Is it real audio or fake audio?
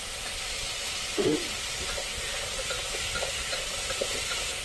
real